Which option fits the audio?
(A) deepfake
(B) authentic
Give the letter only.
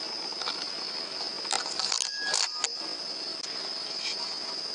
B